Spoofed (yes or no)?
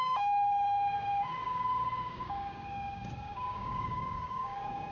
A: yes